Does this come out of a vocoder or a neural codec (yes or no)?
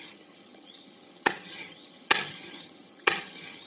yes